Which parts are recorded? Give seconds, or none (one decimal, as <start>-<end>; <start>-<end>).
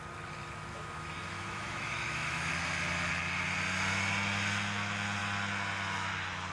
0.0-0.7; 2.5-6.5